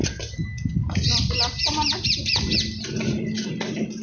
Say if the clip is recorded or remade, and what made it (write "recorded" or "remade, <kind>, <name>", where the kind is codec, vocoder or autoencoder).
recorded